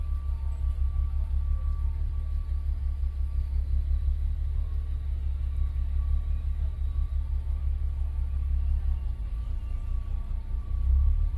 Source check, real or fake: real